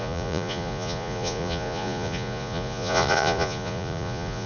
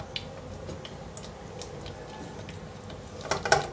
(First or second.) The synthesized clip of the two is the first